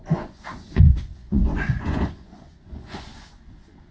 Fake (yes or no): yes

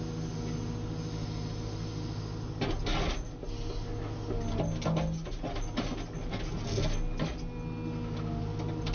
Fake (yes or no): no